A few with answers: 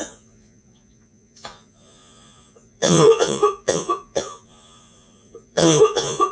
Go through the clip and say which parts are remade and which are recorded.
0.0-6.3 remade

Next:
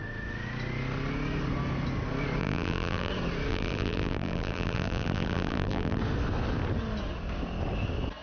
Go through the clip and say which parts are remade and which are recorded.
0.0-2.4 recorded; 2.4-3.1 remade; 3.1-3.5 recorded; 3.5-6.0 remade; 6.0-8.2 recorded

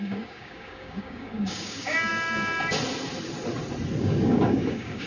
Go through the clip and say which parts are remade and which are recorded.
0.0-2.1 remade; 2.1-4.0 recorded; 4.0-5.1 remade

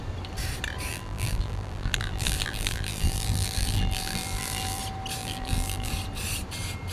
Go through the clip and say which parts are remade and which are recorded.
0.0-0.9 recorded; 0.9-4.8 remade; 4.8-5.2 recorded; 5.2-5.9 remade; 5.9-6.9 recorded

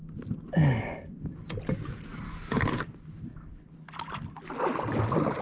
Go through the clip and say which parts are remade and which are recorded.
0.0-5.4 recorded

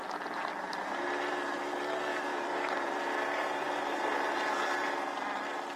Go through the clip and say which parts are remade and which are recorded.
0.0-2.1 recorded; 2.1-4.9 remade; 4.9-5.8 recorded